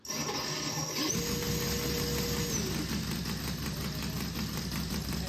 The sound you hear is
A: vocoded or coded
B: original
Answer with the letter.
B